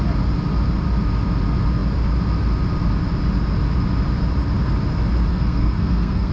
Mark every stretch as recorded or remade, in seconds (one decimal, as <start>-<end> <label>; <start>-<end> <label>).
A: 0.0-5.3 recorded; 5.3-6.3 remade